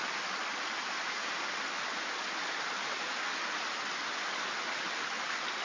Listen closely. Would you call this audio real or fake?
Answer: real